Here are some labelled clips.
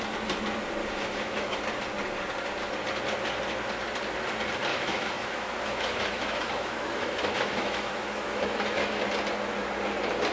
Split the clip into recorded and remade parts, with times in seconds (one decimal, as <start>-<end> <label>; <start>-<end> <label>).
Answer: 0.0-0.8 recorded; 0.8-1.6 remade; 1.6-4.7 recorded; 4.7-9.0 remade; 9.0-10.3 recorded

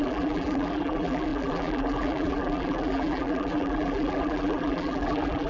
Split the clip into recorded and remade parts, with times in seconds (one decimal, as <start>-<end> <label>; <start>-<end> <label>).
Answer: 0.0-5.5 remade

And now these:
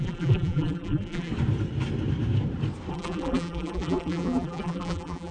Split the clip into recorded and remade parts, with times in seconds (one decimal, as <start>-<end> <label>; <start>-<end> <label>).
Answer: 0.0-1.3 remade; 1.3-2.9 recorded; 2.9-5.3 remade